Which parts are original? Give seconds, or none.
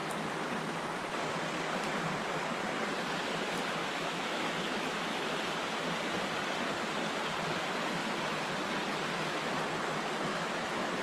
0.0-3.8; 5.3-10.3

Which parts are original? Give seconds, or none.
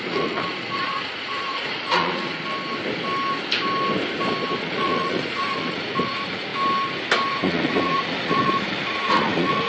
2.3-4.6; 6.5-7.3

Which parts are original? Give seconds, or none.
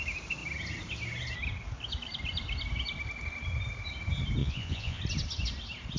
0.0-4.4; 5.0-6.0